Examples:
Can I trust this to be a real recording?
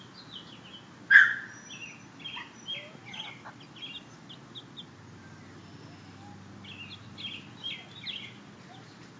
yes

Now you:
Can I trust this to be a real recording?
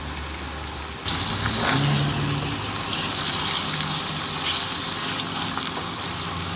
yes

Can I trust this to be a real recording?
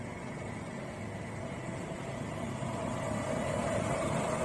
yes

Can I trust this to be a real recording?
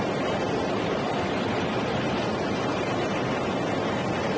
yes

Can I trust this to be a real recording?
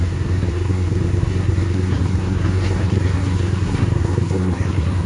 no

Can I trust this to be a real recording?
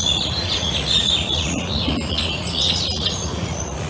no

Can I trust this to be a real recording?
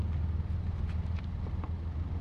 yes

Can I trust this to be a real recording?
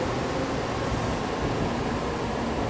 yes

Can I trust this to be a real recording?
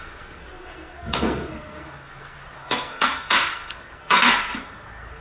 no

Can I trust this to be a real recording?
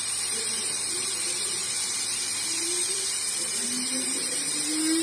no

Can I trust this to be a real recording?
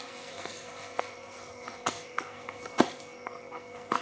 no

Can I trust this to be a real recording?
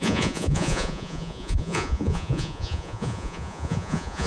no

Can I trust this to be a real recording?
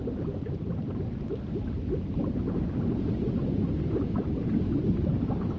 yes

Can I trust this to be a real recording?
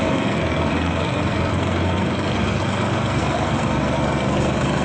no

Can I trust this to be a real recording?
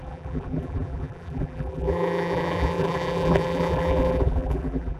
no